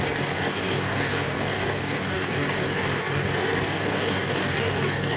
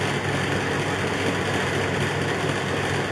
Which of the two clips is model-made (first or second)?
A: first